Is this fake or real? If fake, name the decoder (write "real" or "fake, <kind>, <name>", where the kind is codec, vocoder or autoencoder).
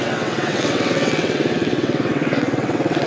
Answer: fake, vocoder, WaveNeXt